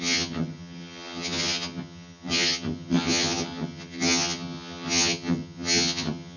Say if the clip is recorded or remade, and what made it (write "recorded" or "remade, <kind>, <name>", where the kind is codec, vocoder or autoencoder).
remade, vocoder, HiFi-GAN